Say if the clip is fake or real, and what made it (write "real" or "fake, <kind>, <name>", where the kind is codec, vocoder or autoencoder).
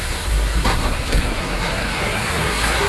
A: fake, codec, SNAC